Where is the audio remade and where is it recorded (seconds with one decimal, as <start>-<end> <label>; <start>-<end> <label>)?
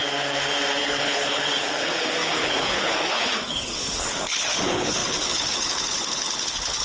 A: 0.0-0.8 recorded; 0.8-6.8 remade